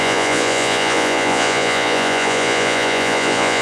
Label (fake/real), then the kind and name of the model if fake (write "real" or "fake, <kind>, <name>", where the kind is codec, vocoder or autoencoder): fake, vocoder, Vocos